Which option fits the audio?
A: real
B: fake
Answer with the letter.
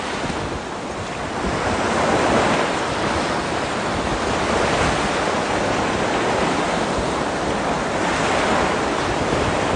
A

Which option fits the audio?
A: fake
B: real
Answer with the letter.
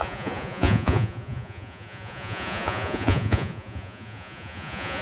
A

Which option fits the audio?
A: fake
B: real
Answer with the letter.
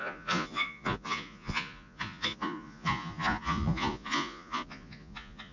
A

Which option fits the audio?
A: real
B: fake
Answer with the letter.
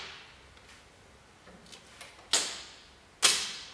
A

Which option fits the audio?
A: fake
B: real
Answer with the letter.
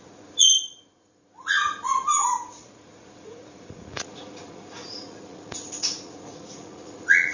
A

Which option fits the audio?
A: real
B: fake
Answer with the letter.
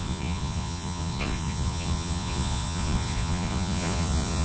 B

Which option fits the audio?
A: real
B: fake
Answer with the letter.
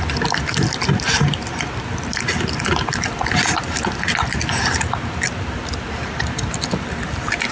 A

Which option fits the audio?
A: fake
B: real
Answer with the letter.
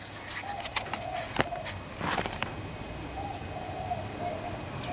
B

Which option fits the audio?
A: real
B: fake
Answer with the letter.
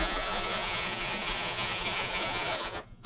B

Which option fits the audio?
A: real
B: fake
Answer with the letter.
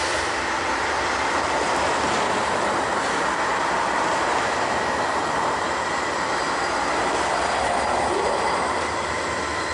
A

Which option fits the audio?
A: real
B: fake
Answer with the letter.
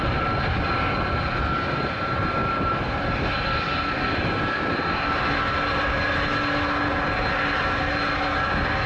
A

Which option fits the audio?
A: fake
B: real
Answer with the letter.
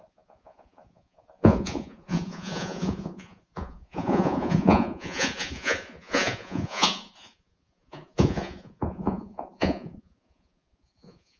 A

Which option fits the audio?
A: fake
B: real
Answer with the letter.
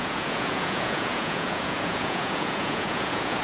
A